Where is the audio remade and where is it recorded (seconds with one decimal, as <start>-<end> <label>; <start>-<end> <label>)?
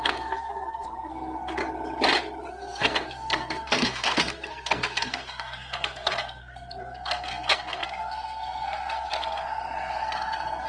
0.0-1.6 remade; 1.6-2.5 recorded; 2.5-10.7 remade